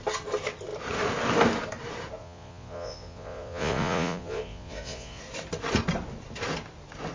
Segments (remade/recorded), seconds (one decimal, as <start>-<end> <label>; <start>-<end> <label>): 0.0-2.2 recorded; 2.2-5.2 remade; 5.2-7.1 recorded